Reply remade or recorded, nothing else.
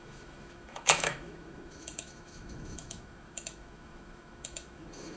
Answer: remade